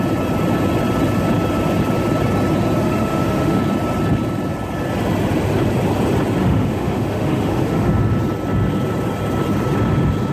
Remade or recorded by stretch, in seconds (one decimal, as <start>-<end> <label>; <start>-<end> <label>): 0.0-2.8 recorded; 2.8-3.6 remade; 3.6-6.4 recorded; 6.4-7.9 remade; 7.9-10.3 recorded